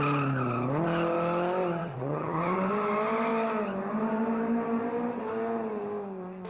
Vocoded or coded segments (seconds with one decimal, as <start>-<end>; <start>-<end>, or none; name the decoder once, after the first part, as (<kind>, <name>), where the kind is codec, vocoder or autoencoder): 1.8-2.7 (vocoder, WaveNeXt)